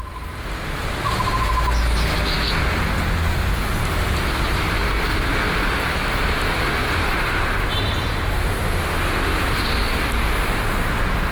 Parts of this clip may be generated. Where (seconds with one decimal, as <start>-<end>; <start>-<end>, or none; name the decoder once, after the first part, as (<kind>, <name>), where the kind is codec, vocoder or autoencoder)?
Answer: 3.8-8.9 (vocoder, BigVGAN v2)